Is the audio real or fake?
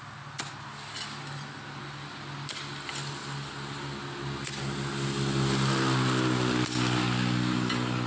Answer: real